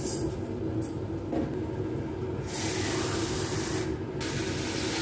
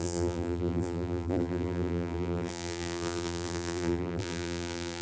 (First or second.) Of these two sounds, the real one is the first